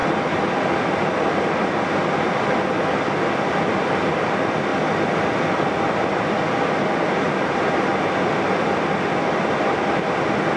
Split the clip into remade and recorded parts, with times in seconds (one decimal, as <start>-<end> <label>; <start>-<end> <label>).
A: 0.0-10.6 recorded

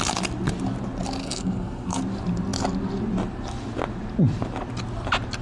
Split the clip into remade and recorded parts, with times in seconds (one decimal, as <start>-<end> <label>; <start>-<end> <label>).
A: 0.0-1.2 recorded; 1.2-2.0 remade; 2.0-5.4 recorded